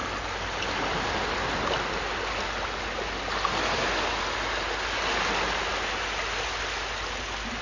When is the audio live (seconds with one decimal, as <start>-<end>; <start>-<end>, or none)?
0.0-7.6